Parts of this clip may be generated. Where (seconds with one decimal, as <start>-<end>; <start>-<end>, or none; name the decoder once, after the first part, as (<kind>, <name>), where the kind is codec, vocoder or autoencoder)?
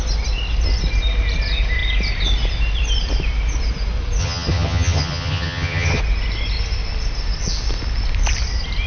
4.2-6.0 (vocoder, HiFi-GAN)